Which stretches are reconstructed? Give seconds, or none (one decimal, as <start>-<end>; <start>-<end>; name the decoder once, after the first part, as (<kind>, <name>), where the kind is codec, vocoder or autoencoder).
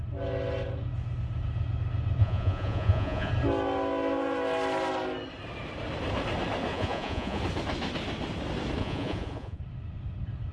2.2-3.3 (vocoder, Vocos); 6.7-7.4; 8.8-9.6